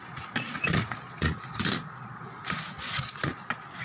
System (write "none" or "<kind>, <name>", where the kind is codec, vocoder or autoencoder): vocoder, Vocos